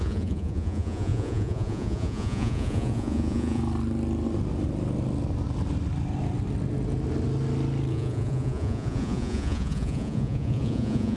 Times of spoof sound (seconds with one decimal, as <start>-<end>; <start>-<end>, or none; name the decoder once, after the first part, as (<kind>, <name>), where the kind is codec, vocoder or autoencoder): 0.0-3.6 (vocoder, Vocos); 7.9-11.2